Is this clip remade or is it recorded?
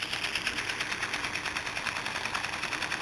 recorded